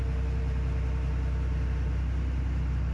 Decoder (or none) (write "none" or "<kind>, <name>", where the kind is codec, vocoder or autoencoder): none